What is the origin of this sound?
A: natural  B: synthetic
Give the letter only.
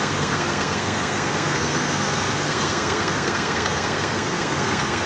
B